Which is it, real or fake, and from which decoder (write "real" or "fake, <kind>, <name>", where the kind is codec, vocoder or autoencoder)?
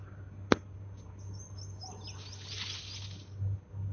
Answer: real